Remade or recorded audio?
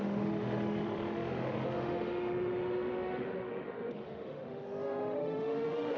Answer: remade